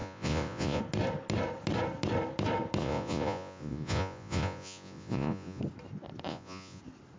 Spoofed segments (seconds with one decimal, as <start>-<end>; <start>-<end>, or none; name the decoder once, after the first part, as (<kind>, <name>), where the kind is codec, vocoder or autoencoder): 0.0-0.8 (vocoder, Vocos); 2.8-5.6; 6.3-6.8